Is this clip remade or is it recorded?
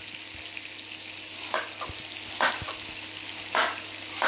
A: recorded